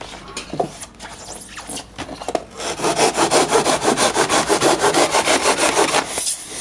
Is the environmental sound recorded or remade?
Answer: recorded